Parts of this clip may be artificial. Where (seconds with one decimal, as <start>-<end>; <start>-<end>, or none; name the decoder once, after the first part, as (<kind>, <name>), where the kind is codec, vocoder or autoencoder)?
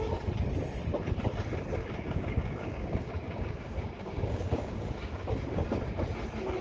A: 1.8-5.8 (codec, DAC)